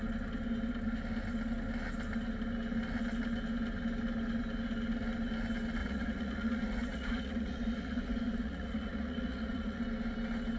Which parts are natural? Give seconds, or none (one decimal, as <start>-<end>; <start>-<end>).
0.0-5.8; 9.8-10.6